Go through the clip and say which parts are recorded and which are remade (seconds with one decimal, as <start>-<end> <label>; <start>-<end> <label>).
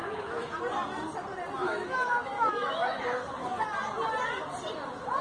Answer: 0.0-0.6 remade; 0.6-1.6 recorded; 1.6-3.6 remade; 3.6-5.2 recorded